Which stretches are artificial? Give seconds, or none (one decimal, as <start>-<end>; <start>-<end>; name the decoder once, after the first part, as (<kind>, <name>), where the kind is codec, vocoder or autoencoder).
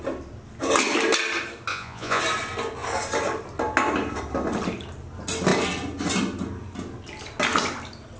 1.7-2.2 (vocoder, Vocos)